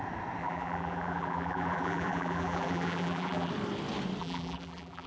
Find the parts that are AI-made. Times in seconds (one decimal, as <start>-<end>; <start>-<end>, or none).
0.4-3.5; 4.2-5.1